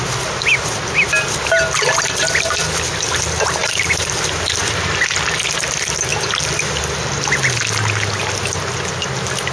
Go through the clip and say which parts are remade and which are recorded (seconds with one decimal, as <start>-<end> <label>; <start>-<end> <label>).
0.0-9.5 recorded